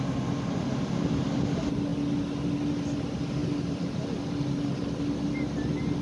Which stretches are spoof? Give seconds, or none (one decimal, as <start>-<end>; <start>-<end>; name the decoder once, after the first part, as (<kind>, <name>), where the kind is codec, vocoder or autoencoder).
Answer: none